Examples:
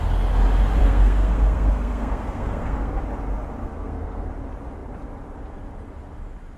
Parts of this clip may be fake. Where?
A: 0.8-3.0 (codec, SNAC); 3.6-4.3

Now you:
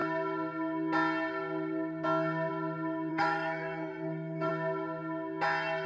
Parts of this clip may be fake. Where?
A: 3.1-4.5 (codec, SNAC)